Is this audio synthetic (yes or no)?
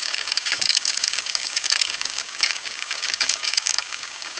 yes